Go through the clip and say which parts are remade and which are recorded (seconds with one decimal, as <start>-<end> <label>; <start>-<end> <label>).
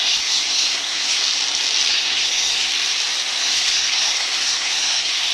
0.0-1.2 remade; 1.2-1.9 recorded; 1.9-2.7 remade; 2.7-3.4 recorded; 3.4-5.3 remade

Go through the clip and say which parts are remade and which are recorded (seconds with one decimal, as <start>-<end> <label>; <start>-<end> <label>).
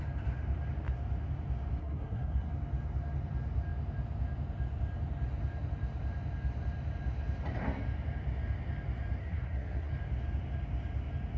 0.0-1.8 recorded; 1.8-2.5 remade; 2.5-9.2 recorded; 9.2-9.9 remade; 9.9-11.4 recorded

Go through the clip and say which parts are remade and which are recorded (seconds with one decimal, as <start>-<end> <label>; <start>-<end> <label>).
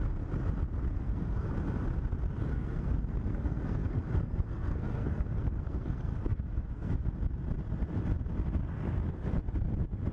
0.0-0.9 recorded; 0.9-1.5 remade; 1.5-2.5 recorded; 2.5-7.1 remade; 7.1-10.1 recorded